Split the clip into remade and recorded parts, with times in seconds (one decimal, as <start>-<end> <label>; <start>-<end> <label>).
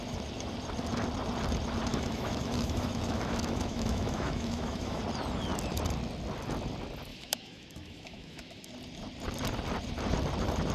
0.0-1.9 recorded; 1.9-5.0 remade; 5.0-7.1 recorded; 7.1-8.7 remade; 8.7-10.7 recorded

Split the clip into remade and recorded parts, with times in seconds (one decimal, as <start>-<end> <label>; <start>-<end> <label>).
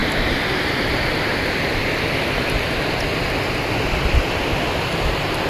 0.0-1.8 recorded; 1.8-4.4 remade; 4.4-5.5 recorded